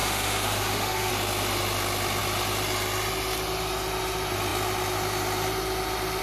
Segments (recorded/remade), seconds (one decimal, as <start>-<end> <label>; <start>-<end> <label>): 0.0-1.1 remade; 1.1-6.2 recorded